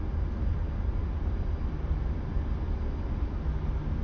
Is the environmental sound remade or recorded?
recorded